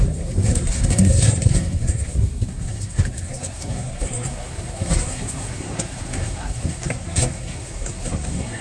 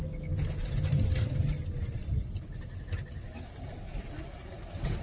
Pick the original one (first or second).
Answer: second